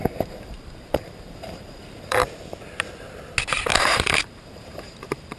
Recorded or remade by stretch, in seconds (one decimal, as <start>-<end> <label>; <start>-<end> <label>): 0.0-2.2 remade; 2.2-3.8 recorded; 3.8-5.4 remade